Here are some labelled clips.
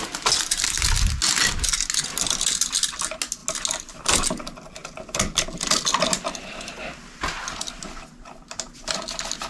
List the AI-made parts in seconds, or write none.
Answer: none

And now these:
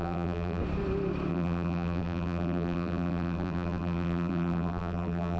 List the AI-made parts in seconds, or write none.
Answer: 0.0-0.6 (vocoder, BigVGAN v2); 1.3-5.4

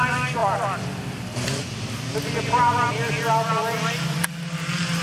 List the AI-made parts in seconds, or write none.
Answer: 0.4-2.9 (vocoder, BigVGAN v2)

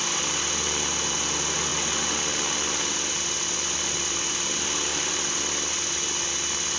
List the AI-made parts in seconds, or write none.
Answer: 4.9-5.5 (vocoder, BigVGAN v2)